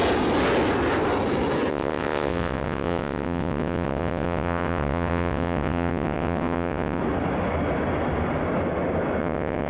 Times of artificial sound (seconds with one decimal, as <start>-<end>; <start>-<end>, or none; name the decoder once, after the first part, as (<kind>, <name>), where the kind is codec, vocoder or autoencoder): 1.7-7.0 (vocoder, WaveNeXt); 9.2-9.7